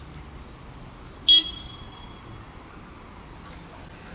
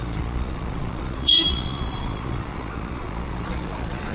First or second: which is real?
first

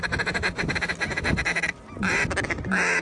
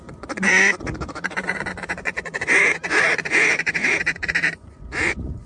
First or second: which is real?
first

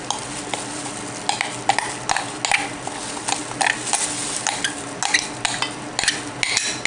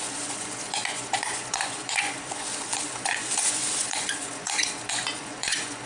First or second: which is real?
first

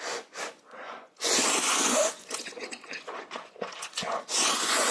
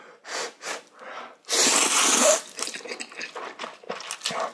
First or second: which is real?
second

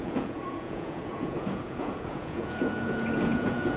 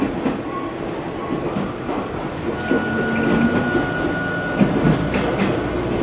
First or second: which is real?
second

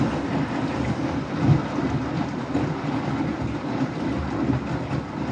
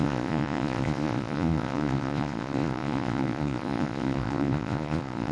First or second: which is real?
first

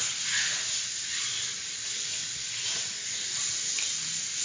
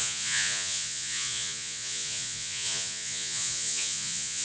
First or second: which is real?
first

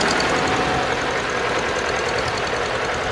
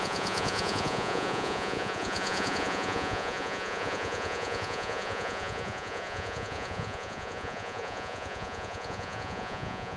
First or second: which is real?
first